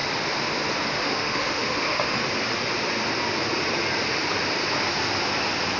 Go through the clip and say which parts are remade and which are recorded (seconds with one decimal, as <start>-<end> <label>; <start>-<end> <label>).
0.0-0.9 recorded; 0.9-2.2 remade; 2.2-5.8 recorded